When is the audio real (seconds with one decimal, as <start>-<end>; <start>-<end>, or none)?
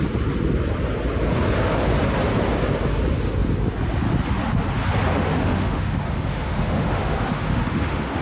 0.0-5.1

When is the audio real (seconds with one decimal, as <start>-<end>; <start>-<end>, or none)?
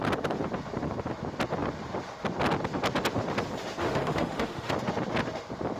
0.0-3.8; 4.7-5.8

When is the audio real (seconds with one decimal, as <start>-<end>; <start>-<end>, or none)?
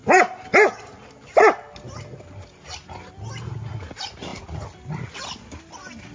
0.0-6.1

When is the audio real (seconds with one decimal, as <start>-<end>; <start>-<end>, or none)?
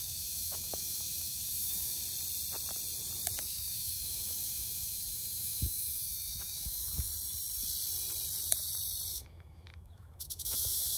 2.0-3.4; 7.1-9.1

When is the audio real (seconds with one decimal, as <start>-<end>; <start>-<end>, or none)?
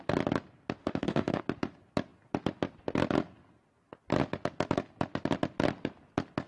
0.0-0.8; 1.4-6.5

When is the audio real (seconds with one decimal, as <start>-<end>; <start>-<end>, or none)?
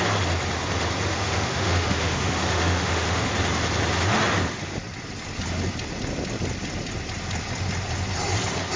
0.0-1.1; 3.3-8.8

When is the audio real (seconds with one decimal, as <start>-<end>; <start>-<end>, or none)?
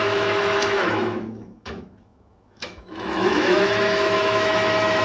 none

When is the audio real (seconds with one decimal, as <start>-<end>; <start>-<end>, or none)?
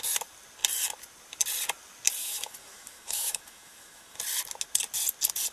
0.0-2.2; 4.2-5.5